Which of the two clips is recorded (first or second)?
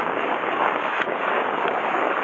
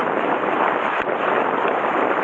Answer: second